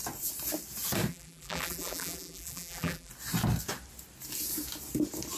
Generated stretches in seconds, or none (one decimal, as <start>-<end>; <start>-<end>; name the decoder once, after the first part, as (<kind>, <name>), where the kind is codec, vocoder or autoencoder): 1.1-3.1 (vocoder, BigVGAN v2)